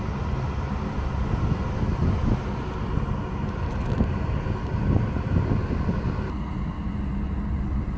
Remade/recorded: recorded